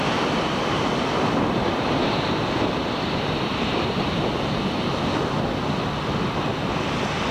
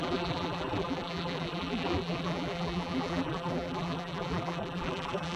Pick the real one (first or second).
first